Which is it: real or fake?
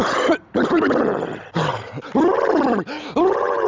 real